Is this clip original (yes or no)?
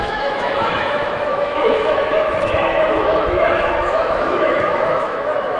no